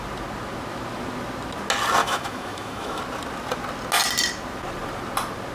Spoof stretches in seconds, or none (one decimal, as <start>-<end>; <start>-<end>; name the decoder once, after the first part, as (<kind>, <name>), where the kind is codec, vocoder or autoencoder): 2.0-3.0 (autoencoder, DAC-VAE)

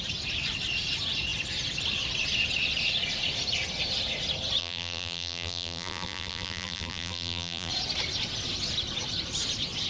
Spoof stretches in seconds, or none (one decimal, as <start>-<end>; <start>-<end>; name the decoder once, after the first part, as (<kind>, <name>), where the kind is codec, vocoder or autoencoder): 4.6-7.7 (vocoder, BigVGAN v2)

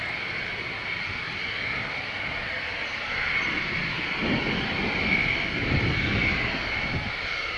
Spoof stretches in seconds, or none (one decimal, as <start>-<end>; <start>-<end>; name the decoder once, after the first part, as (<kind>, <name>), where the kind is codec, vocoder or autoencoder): none

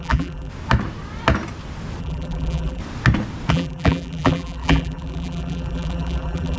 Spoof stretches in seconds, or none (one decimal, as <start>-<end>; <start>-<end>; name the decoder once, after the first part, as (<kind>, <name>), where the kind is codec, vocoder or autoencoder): 0.0-0.5 (vocoder, BigVGAN v2); 2.0-2.8; 3.5-6.6

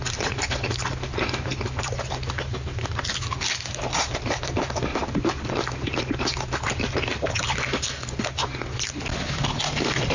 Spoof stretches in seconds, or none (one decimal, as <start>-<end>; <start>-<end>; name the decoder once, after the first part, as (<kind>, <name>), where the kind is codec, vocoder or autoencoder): none

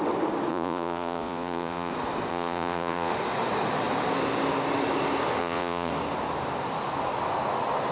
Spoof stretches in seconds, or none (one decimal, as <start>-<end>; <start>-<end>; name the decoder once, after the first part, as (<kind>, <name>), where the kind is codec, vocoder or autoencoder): 0.5-1.9 (vocoder, Vocos); 2.3-3.1; 5.4-5.9

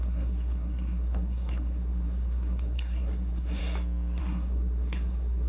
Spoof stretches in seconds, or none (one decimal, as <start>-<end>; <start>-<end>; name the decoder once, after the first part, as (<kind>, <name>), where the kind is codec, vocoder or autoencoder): 0.0-3.6 (codec, SNAC); 4.2-5.5

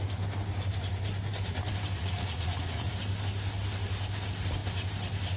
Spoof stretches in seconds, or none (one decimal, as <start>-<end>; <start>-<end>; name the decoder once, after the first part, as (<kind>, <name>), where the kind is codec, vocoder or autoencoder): 2.0-2.9 (vocoder, Vocos)